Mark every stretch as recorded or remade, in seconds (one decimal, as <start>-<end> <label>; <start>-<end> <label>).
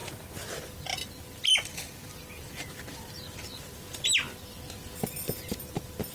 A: 0.0-6.1 recorded